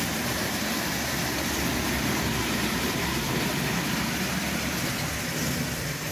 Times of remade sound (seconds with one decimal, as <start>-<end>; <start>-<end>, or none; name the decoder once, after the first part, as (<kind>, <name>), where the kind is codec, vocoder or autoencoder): 2.4-4.0 (vocoder, BigVGAN v2)